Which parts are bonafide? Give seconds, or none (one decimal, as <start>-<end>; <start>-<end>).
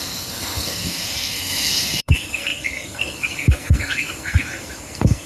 none